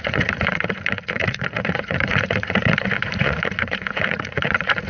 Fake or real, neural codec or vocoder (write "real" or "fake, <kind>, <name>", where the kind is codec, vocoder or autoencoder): fake, vocoder, Vocos